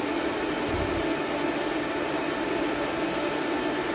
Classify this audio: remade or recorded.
recorded